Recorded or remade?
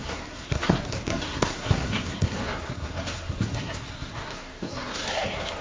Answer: remade